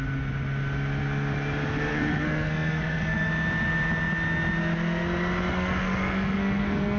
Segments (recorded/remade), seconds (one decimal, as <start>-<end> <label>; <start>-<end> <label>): 0.0-1.9 recorded; 1.9-3.3 remade; 3.3-5.5 recorded; 5.5-7.0 remade